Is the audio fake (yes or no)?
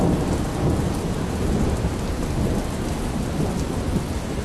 no